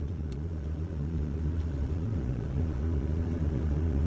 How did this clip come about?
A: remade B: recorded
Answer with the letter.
A